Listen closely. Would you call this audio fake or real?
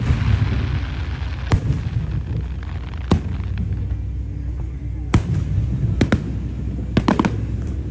real